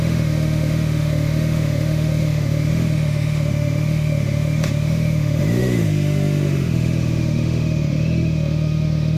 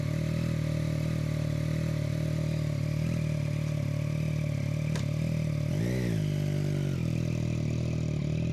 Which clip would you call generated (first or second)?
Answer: first